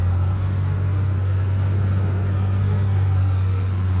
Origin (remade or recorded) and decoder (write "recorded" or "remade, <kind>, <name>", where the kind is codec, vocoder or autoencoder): remade, codec, SNAC